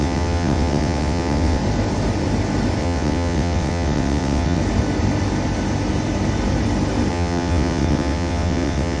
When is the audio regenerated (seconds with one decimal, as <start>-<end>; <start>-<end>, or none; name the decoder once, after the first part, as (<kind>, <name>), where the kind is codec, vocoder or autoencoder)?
0.0-1.6 (vocoder, WaveNeXt); 2.8-4.6; 7.1-9.0